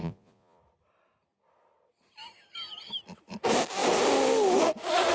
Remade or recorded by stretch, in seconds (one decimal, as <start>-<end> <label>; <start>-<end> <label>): 0.0-0.6 remade; 0.6-5.1 recorded